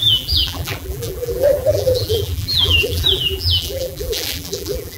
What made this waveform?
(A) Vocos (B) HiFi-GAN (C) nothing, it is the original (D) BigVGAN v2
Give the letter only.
D